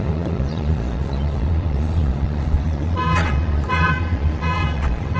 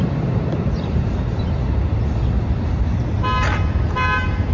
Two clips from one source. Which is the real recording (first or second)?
second